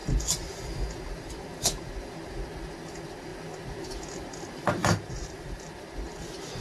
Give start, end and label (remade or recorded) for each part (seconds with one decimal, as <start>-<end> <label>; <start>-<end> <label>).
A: 0.0-4.8 recorded; 4.8-5.8 remade; 5.8-6.6 recorded